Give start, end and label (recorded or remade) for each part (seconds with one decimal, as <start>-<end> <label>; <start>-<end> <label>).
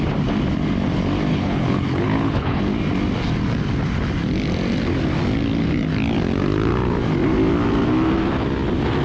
0.0-1.3 recorded; 1.3-2.6 remade; 2.6-9.0 recorded